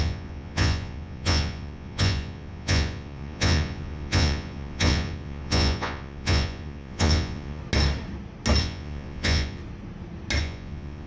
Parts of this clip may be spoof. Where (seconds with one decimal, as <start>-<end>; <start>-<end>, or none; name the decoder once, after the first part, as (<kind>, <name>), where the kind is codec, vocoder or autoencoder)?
0.0-7.6 (vocoder, Vocos); 8.6-9.6; 10.4-11.1